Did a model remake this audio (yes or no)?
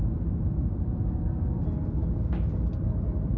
no